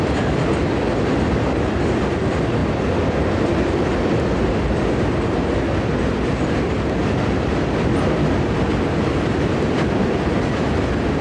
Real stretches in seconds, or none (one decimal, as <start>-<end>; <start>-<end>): 0.0-11.2